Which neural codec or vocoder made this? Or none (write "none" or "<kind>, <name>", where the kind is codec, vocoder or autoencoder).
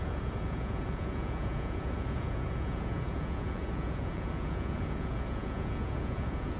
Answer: vocoder, Vocos